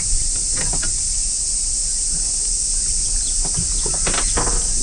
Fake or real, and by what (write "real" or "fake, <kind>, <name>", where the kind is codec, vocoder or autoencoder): real